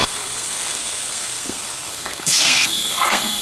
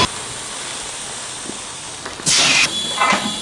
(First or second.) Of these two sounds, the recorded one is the second